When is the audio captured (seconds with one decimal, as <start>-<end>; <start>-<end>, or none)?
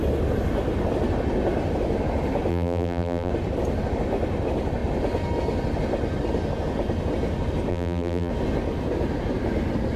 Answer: 0.0-2.5; 3.3-7.7; 8.3-10.0